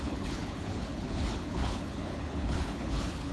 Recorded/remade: remade